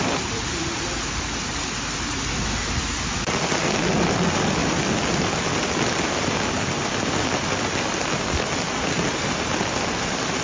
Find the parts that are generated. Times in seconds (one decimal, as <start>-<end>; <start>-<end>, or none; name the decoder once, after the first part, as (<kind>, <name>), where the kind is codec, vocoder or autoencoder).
none

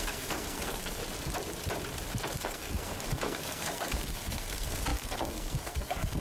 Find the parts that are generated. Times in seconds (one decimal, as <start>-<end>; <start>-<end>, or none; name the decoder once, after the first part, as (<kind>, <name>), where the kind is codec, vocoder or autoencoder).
0.0-1.0 (codec, SNAC); 2.4-6.2

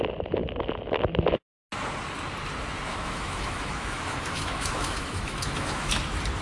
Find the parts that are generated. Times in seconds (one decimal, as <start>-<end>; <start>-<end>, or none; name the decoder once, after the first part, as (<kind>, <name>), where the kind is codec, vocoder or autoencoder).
2.9-6.0 (autoencoder, DAC-VAE)

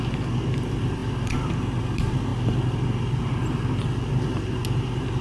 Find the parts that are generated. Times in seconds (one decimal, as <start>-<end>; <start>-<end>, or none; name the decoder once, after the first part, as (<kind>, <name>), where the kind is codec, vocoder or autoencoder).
none

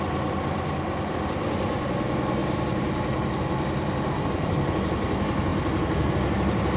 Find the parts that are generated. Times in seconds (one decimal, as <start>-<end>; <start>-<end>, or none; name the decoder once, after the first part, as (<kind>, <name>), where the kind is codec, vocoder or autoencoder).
none

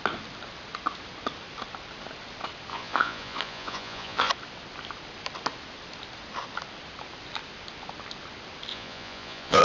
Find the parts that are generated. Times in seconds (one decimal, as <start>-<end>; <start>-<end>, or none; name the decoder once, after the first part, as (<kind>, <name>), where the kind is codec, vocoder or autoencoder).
2.7-4.3 (vocoder, Vocos); 8.7-9.6

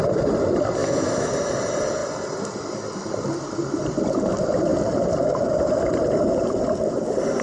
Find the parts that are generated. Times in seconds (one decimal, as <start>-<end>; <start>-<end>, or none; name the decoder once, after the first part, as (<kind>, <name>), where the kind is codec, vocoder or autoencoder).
0.8-1.3 (autoencoder, DAC-VAE)